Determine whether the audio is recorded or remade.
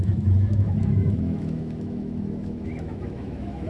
remade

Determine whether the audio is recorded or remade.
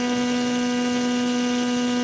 recorded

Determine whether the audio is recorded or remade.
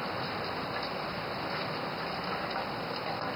recorded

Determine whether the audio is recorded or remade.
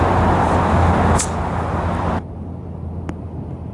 recorded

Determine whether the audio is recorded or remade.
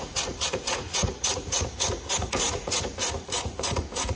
remade